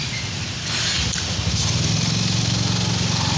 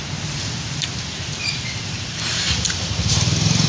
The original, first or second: first